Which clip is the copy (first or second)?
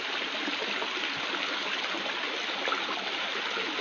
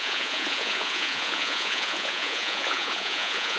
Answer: second